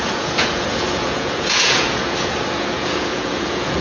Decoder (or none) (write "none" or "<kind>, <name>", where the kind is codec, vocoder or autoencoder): vocoder, Vocos